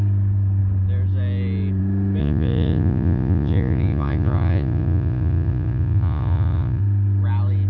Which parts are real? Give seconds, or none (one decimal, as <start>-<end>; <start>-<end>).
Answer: 0.0-2.2; 6.8-7.7